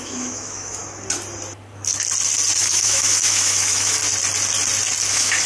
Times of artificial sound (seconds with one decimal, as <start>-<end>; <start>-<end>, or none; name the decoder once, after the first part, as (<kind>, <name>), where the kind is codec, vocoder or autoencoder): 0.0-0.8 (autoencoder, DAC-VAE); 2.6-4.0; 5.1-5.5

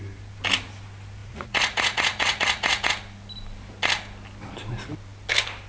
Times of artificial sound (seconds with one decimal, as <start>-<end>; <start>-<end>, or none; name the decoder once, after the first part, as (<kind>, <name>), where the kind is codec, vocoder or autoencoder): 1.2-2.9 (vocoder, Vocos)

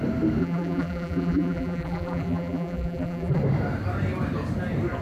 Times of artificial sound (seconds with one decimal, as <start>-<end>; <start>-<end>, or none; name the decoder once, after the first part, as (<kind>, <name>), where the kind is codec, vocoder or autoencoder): 0.4-3.4 (vocoder, BigVGAN v2)

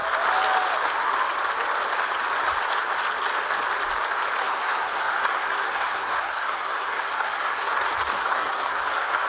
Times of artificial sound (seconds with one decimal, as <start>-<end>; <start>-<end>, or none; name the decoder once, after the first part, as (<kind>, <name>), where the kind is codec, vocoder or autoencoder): 4.4-7.7 (codec, SNAC); 8.2-9.3

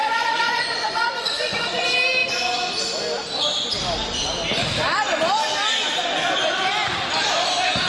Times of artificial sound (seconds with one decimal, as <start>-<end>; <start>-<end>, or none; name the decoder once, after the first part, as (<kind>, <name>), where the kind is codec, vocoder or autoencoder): 0.0-1.8 (vocoder, Vocos)

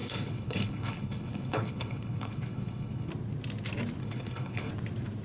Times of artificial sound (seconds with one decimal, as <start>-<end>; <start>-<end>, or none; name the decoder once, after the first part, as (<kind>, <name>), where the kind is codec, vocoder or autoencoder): 0.0-3.1 (codec, HILCodec); 4.0-4.7

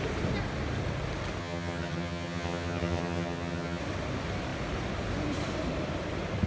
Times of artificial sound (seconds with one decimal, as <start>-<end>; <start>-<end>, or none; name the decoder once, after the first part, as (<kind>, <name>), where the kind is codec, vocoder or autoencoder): 1.4-3.8 (vocoder, HiFi-GAN)

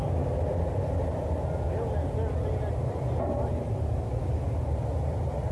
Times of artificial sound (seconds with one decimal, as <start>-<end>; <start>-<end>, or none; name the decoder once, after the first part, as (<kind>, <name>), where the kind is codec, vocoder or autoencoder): none